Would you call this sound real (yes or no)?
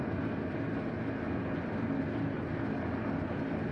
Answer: yes